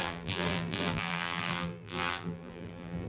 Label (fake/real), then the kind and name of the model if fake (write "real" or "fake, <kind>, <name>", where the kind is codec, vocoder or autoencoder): fake, vocoder, BigVGAN v2